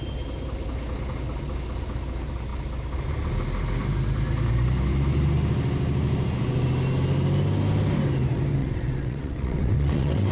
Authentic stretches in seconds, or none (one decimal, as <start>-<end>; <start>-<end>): 0.0-8.6